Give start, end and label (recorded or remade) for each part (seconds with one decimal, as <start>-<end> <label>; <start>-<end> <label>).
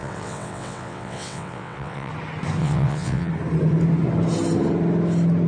0.0-2.1 remade; 2.1-2.6 recorded; 2.6-3.3 remade; 3.3-5.5 recorded